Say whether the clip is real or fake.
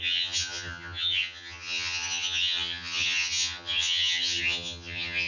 fake